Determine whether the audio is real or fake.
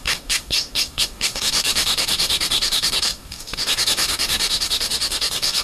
fake